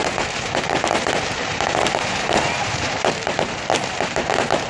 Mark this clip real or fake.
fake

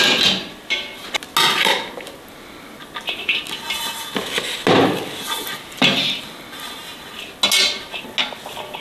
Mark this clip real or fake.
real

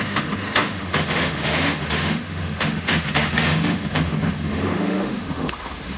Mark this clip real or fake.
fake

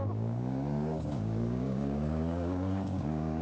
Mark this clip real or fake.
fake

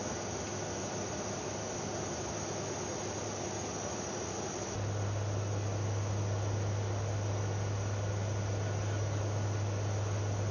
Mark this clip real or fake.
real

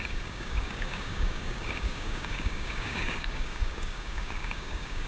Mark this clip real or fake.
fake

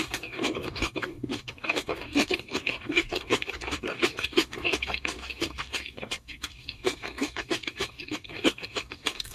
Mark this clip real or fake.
fake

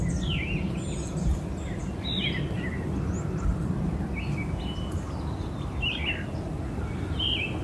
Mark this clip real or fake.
real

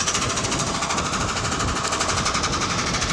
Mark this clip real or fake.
real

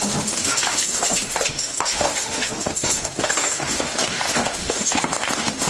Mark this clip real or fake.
fake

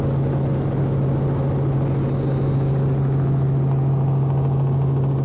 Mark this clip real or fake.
real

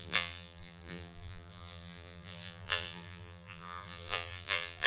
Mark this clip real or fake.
fake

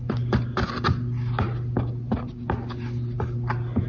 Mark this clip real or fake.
real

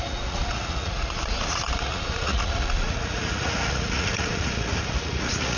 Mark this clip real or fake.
fake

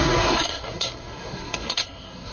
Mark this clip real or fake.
fake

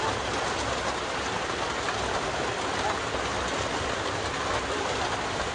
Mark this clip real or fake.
real